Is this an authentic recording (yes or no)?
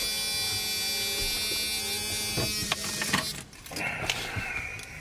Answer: yes